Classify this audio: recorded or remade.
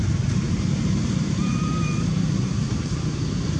remade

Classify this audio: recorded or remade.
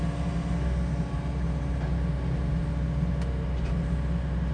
recorded